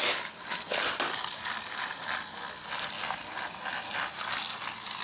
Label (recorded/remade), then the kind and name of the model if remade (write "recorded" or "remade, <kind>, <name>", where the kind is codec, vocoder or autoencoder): recorded